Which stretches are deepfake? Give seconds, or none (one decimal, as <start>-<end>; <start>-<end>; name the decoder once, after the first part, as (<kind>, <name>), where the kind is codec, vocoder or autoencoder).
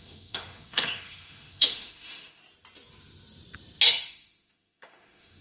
0.0-2.4 (autoencoder, DAC-VAE); 3.9-5.4